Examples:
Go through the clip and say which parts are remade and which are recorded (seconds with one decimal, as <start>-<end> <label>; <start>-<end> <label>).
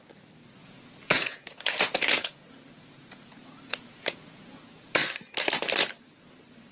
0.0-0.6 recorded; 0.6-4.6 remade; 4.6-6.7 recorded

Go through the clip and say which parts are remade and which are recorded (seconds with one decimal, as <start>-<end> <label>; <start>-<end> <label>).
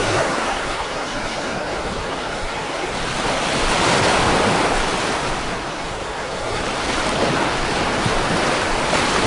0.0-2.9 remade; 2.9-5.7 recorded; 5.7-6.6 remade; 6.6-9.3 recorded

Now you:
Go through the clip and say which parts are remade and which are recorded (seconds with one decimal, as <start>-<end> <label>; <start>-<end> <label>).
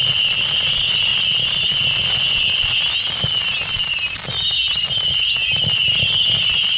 0.0-6.8 recorded